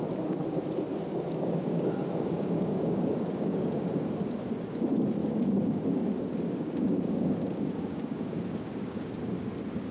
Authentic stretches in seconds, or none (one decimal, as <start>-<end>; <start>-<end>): 0.0-0.9; 4.2-5.2; 9.2-9.9

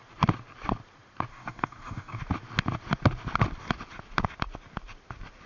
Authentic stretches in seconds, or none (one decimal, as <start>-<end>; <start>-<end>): 0.0-1.3; 2.2-5.5

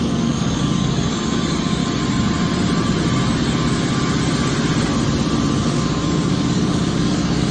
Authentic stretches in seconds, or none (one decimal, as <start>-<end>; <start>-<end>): 1.8-5.6

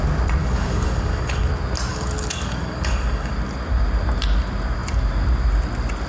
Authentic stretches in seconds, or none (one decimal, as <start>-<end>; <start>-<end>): 0.0-0.4; 1.5-1.9; 3.3-6.1

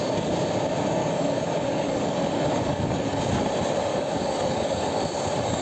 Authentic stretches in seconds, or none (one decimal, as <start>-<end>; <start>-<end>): 0.0-1.0; 3.2-3.9; 5.0-5.6

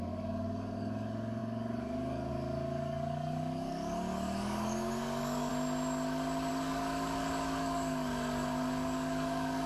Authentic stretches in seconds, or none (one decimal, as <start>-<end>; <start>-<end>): 5.5-6.5